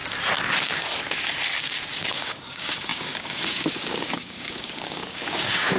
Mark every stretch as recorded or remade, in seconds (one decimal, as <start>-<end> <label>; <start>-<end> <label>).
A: 0.0-0.5 recorded; 0.5-0.9 remade; 0.9-1.6 recorded; 1.6-5.8 remade